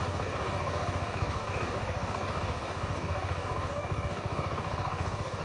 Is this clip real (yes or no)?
no